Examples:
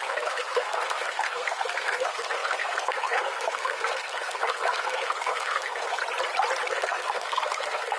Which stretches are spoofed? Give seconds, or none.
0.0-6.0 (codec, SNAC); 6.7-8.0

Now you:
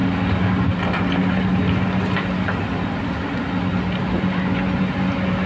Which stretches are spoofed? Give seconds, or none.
none

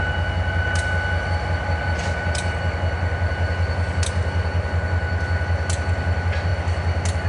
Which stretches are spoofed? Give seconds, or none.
none

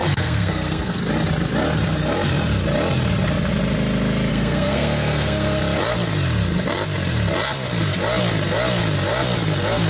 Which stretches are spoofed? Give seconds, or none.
0.0-1.0 (codec, SNAC); 4.3-5.6